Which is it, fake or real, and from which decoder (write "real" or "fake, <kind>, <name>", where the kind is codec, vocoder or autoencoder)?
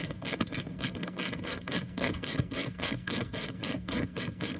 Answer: fake, codec, SNAC